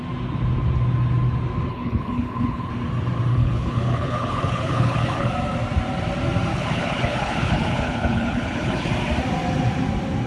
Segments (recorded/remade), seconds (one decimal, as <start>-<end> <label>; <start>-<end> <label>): 0.0-1.7 recorded; 1.7-2.7 remade; 2.7-3.3 recorded; 3.3-5.3 remade; 5.3-6.5 recorded; 6.5-8.9 remade; 8.9-10.3 recorded